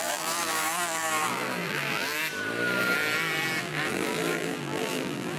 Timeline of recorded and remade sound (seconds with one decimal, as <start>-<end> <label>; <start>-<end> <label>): 0.0-2.2 remade; 2.2-3.6 recorded; 3.6-5.4 remade